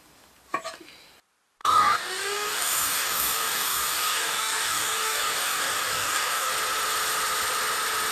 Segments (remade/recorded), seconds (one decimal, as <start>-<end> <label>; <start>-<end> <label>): 0.0-1.6 recorded; 1.6-6.5 remade; 6.5-8.1 recorded